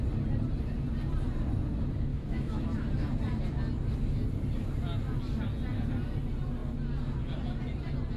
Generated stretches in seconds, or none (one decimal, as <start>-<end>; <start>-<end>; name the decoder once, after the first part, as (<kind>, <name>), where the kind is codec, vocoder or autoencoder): 2.1-2.6 (autoencoder, DAC-VAE)